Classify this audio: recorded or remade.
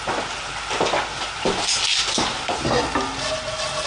recorded